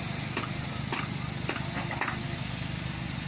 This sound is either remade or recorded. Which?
recorded